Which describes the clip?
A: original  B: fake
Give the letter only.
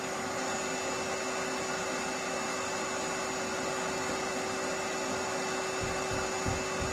A